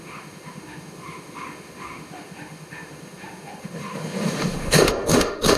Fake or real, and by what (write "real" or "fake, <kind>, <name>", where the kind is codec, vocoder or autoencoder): fake, autoencoder, DAC-VAE